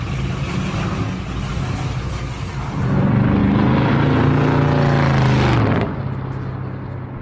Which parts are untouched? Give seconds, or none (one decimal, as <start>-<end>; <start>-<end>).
0.0-7.2